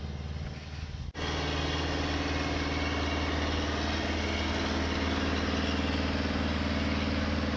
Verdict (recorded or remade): recorded